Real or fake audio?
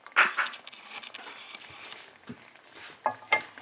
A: real